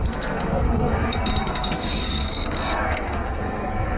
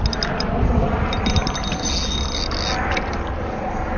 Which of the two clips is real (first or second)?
second